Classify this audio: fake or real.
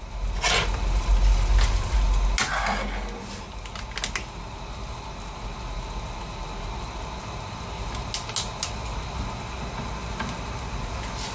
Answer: real